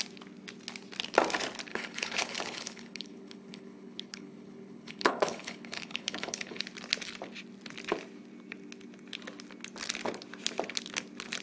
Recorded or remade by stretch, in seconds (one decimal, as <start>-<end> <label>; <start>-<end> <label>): 0.0-1.7 recorded; 1.7-6.6 remade; 6.6-11.4 recorded